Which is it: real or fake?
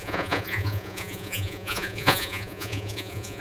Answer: fake